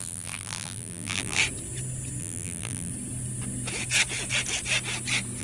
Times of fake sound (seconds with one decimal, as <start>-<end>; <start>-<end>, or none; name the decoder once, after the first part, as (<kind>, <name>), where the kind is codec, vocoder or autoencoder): 0.0-1.4 (vocoder, BigVGAN v2); 2.2-2.9